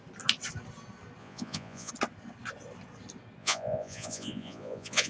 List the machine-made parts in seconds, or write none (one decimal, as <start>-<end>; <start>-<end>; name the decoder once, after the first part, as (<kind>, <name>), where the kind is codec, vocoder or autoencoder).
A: 1.2-1.9 (vocoder, Vocos); 3.4-5.1